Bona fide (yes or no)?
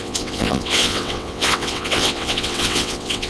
no